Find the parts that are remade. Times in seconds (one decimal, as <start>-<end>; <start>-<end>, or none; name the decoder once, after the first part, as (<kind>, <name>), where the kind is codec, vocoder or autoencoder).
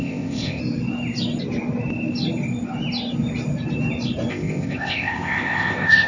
0.0-0.6 (codec, ZipCodec); 4.3-6.1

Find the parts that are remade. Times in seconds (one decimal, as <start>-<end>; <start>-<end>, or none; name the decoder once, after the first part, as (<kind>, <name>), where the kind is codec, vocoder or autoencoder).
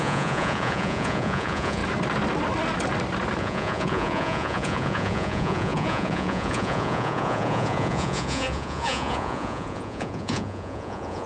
0.0-1.8 (vocoder, Vocos); 3.4-11.3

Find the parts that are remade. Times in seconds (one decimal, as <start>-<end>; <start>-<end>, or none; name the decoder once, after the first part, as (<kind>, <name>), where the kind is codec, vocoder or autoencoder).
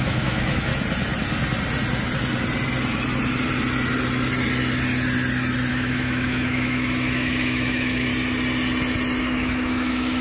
0.0-0.7 (autoencoder, DAC-VAE); 5.7-8.1; 9.2-10.2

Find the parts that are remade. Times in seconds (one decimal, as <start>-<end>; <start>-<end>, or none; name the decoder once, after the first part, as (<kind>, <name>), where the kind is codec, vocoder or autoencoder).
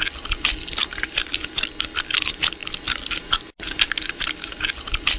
none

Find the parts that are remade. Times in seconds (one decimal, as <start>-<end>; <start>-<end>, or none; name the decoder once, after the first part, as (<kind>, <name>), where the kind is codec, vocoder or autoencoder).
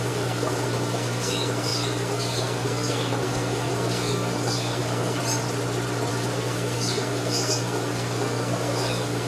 0.0-5.2 (codec, SNAC); 6.1-9.3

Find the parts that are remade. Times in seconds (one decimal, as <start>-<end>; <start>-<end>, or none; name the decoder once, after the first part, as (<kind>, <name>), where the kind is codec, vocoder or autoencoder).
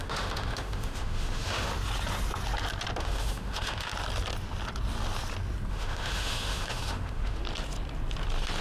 0.0-1.7 (autoencoder, DAC-VAE); 3.0-3.9; 5.7-7.4